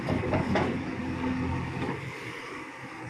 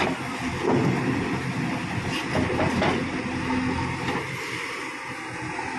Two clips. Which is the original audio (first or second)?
second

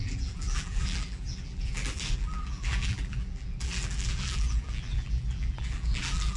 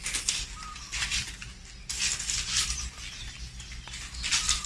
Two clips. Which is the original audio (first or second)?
second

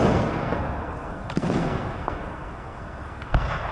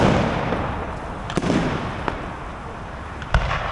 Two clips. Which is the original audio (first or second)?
second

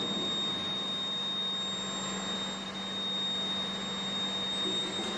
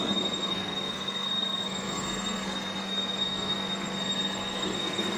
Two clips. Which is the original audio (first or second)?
first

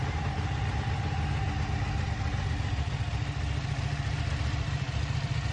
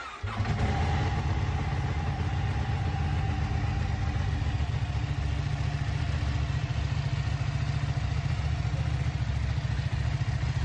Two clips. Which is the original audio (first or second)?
second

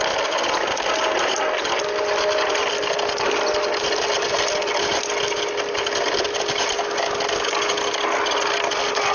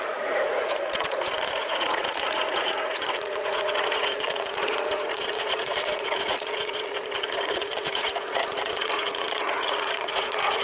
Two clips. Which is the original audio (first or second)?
first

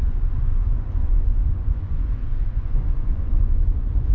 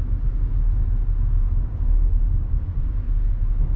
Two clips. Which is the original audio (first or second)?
second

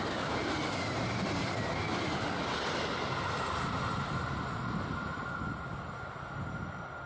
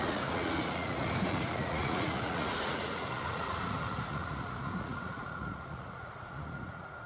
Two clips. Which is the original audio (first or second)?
first